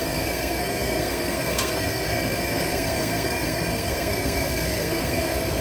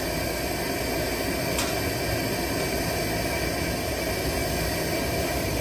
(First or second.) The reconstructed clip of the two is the first